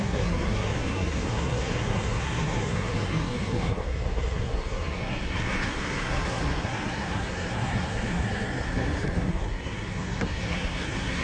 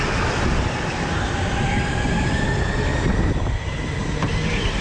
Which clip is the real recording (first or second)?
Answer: second